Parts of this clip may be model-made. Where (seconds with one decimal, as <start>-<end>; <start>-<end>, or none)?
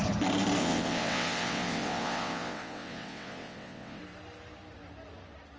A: 0.6-4.0